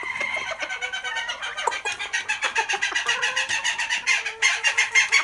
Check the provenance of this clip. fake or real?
fake